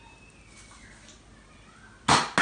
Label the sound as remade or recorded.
recorded